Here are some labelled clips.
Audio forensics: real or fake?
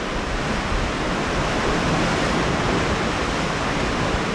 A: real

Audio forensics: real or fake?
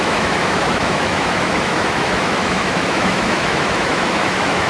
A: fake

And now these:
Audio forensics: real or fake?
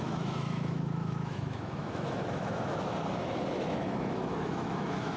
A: fake